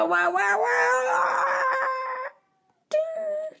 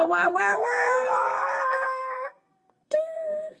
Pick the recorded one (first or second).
first